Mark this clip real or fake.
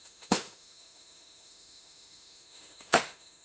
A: fake